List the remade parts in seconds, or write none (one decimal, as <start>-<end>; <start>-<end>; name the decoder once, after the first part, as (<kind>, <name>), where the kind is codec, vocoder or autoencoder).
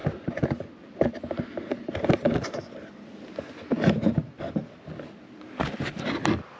none